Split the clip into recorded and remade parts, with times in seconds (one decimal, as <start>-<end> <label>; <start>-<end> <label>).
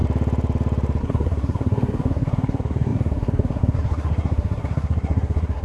0.0-1.0 recorded; 1.0-5.6 remade